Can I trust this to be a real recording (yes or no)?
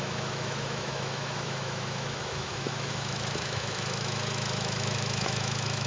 no